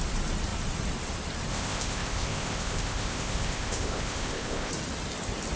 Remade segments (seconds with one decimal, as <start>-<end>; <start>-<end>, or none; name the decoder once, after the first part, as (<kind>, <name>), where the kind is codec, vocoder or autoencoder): 1.5-4.7 (codec, ZipCodec)